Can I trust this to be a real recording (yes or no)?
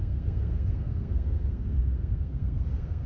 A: no